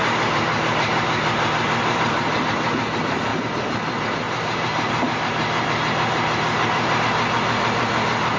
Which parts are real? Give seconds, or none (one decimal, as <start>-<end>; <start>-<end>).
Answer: 2.4-3.3; 7.0-8.4